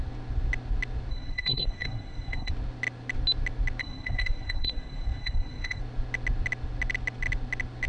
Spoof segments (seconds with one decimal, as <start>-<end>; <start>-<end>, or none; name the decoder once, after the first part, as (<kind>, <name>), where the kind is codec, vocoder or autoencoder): 1.1-2.5 (codec, SNAC); 3.8-5.8